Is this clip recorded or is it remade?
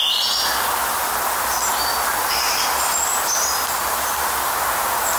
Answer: recorded